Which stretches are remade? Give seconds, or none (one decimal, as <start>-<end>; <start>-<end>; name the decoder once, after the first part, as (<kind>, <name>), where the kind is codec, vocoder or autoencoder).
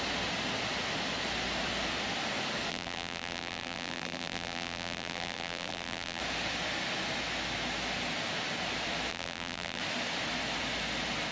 2.7-6.2 (vocoder, BigVGAN v2); 9.1-9.8